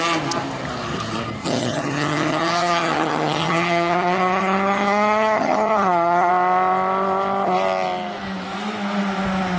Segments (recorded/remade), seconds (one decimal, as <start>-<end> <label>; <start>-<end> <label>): 0.0-1.4 recorded; 1.4-6.3 remade; 6.3-9.6 recorded